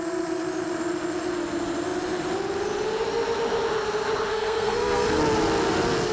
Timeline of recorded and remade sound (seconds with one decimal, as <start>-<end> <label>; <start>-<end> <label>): 0.0-4.3 recorded; 4.3-5.2 remade; 5.2-6.1 recorded